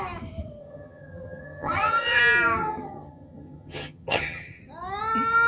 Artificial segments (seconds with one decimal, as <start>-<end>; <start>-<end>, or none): 0.6-2.2; 2.6-4.6